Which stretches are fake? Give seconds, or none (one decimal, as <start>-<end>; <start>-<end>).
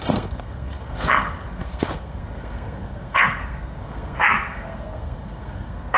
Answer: 0.0-6.0